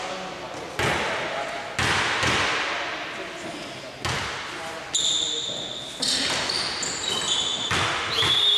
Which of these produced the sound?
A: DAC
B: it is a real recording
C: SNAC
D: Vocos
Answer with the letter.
B